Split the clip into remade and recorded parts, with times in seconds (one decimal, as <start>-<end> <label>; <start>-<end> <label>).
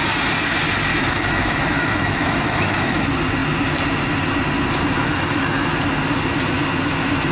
0.0-0.9 recorded; 0.9-3.0 remade; 3.0-5.0 recorded; 5.0-5.7 remade; 5.7-7.3 recorded